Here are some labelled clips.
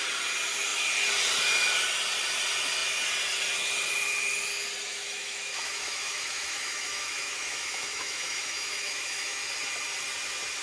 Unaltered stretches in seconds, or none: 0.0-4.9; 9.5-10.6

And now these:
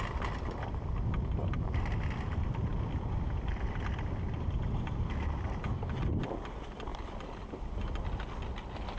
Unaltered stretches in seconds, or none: 0.0-9.0

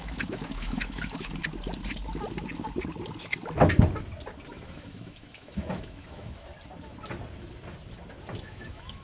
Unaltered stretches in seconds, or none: 1.4-4.5; 6.5-8.4

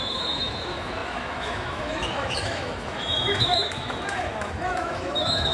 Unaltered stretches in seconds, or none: none

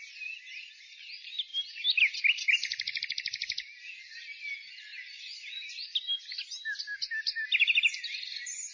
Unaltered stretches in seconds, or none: 0.0-8.7

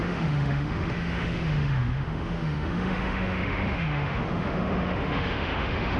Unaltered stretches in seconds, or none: none

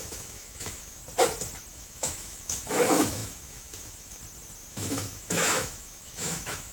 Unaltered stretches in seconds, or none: 1.0-1.7; 4.2-4.7